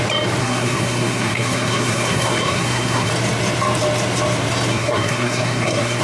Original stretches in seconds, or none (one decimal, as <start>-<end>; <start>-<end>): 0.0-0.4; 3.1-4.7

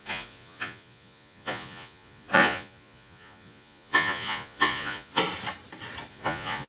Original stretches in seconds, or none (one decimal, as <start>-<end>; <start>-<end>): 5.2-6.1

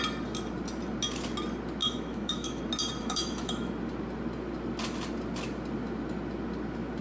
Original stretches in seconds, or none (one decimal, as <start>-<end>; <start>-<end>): 0.0-1.8; 2.6-3.0; 3.7-7.0

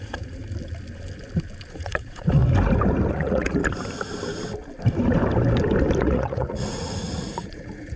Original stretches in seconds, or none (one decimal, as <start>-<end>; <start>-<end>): 0.4-1.7; 2.4-3.1; 3.6-6.0